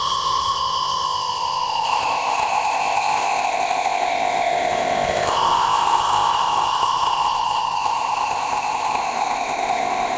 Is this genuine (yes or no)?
no